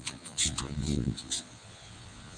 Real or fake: fake